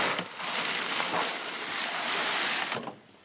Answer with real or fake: real